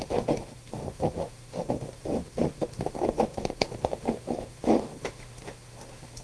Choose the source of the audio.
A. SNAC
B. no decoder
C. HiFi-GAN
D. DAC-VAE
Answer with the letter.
D